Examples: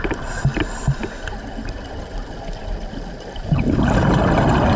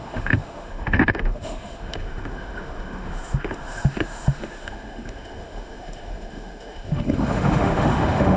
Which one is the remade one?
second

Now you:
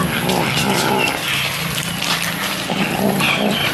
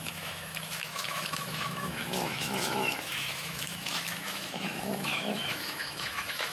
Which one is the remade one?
second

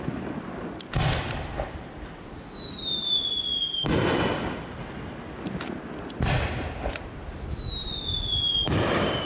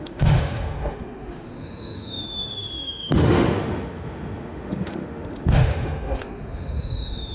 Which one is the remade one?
second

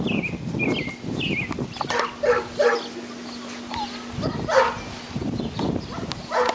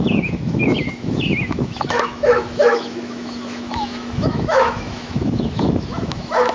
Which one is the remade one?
second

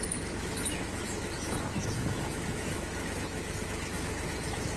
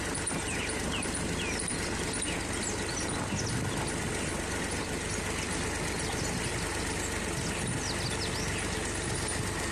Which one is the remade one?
first